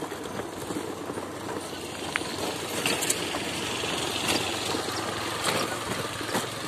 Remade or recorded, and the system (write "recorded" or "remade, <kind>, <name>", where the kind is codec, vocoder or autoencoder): recorded